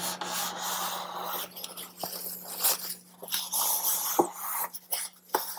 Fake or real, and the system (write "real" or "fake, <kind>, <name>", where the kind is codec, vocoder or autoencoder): real